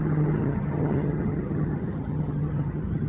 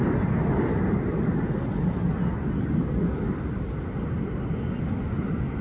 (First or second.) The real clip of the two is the second